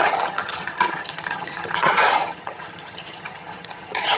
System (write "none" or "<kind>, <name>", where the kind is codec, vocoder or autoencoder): vocoder, HiFi-GAN